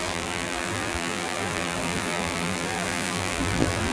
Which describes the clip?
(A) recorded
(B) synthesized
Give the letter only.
B